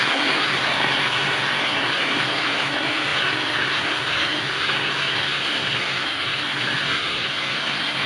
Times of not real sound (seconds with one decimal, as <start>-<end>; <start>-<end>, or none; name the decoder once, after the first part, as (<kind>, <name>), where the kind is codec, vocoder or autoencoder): 0.0-8.1 (codec, SNAC)